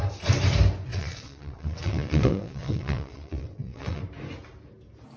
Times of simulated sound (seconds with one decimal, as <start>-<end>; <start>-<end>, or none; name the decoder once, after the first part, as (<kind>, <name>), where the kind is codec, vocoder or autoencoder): 0.9-4.0 (vocoder, WaveNeXt)